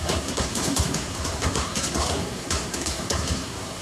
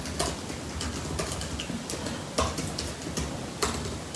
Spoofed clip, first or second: first